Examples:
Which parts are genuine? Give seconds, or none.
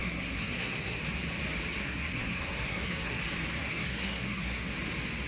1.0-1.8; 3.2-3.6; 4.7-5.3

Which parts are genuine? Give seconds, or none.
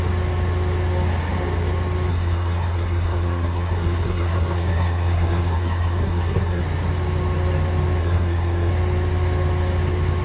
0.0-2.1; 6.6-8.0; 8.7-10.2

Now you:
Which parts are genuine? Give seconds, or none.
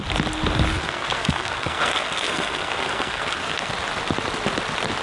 0.0-0.7; 3.7-5.0